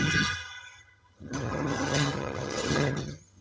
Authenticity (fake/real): fake